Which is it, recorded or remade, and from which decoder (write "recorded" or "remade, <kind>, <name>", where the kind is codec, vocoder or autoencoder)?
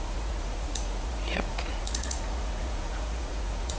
remade, vocoder, Vocos